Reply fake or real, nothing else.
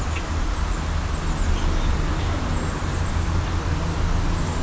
real